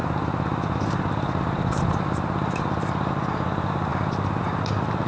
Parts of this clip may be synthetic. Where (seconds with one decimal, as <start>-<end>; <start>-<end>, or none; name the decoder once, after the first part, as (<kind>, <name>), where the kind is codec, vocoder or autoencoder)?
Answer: none